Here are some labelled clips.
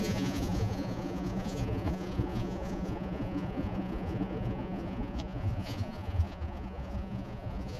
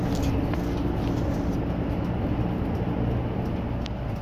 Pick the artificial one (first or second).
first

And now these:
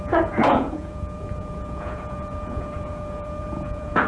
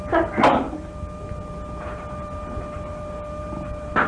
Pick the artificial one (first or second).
first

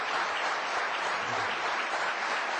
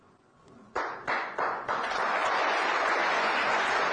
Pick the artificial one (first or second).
second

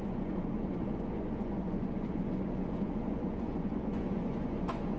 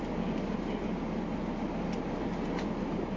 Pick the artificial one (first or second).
first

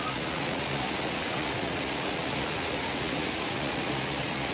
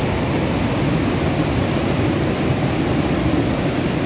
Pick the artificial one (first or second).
first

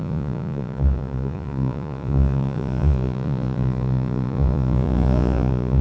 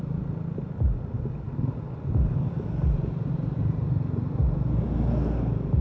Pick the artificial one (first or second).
first